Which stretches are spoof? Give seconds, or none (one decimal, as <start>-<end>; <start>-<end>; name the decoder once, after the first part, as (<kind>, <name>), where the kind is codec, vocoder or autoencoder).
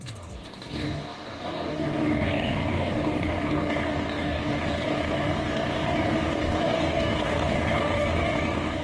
0.0-8.8 (codec, DAC)